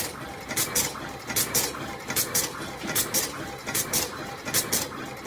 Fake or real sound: real